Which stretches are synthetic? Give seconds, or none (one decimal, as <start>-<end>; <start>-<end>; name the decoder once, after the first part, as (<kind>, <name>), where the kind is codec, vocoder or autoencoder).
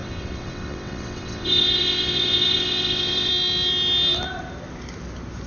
0.0-3.3 (vocoder, WaveNeXt)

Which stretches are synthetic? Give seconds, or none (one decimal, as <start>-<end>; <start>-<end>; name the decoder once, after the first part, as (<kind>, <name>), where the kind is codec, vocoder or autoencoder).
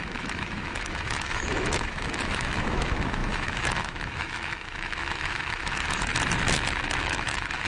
0.0-6.1 (autoencoder, DAC-VAE); 7.0-7.7